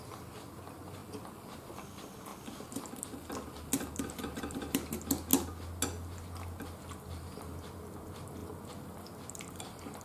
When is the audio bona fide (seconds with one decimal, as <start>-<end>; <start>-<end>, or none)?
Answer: 0.0-10.0